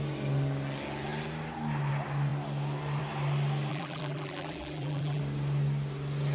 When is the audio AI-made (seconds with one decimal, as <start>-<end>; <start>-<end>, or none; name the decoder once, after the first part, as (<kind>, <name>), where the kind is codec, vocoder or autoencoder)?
3.7-5.2 (vocoder, BigVGAN v2)